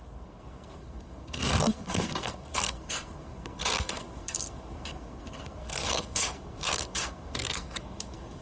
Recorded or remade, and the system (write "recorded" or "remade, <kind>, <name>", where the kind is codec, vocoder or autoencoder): remade, codec, SNAC